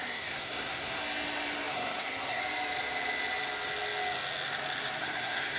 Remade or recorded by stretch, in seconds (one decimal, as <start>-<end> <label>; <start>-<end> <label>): 0.0-1.0 remade; 1.0-1.7 recorded; 1.7-2.4 remade; 2.4-5.0 recorded; 5.0-5.6 remade